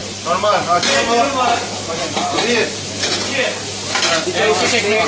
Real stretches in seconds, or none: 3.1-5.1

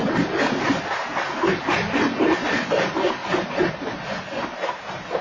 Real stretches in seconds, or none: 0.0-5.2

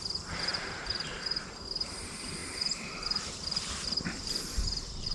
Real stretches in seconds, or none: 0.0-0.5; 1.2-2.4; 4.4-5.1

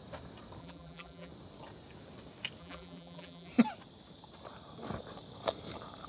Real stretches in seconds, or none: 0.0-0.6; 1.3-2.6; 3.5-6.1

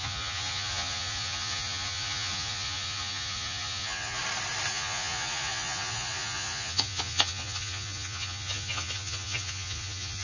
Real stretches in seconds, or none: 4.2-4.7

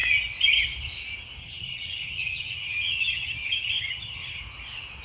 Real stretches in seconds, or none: 0.0-1.4; 4.4-5.0